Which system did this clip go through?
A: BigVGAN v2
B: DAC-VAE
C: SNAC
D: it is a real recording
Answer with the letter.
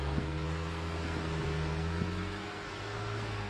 C